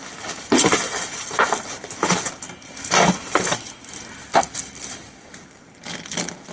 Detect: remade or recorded recorded